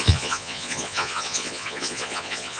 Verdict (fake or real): fake